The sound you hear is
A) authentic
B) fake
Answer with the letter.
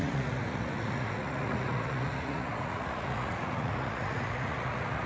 B